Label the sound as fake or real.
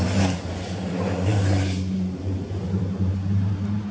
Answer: fake